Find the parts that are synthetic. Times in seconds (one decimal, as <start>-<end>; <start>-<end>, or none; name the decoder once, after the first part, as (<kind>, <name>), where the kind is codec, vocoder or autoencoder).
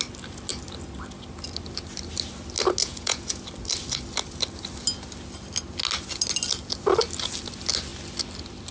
2.8-3.4 (vocoder, Vocos)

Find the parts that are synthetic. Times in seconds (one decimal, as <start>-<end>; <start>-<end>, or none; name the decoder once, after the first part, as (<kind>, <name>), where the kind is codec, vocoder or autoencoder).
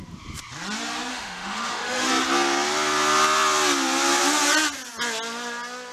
1.1-2.1 (autoencoder, DAC-VAE)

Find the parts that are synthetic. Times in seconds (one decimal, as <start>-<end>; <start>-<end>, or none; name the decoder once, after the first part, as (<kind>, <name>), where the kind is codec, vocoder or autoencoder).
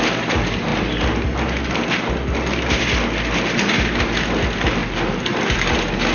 4.8-5.4 (vocoder, BigVGAN v2)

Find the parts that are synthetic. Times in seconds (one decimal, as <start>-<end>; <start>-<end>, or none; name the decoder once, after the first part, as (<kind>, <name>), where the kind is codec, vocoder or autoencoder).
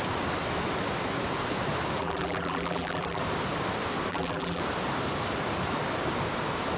2.0-3.2 (vocoder, BigVGAN v2); 4.1-4.6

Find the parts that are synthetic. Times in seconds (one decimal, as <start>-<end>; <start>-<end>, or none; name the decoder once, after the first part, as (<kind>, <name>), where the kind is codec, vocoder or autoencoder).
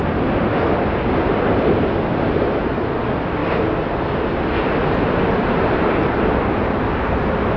none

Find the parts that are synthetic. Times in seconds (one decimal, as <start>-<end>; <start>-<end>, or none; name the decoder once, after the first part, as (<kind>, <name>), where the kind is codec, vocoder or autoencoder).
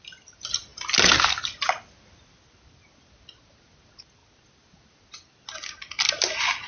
none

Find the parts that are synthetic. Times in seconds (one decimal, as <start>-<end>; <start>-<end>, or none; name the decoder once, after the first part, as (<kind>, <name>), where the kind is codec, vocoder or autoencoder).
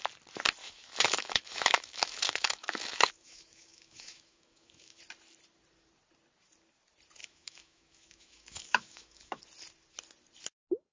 0.6-5.0 (autoencoder, DAC-VAE); 7.2-9.4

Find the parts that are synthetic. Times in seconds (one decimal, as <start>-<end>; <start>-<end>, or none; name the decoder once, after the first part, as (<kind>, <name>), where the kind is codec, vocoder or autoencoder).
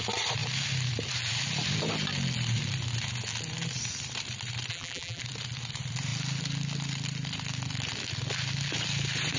4.7-5.2 (vocoder, BigVGAN v2)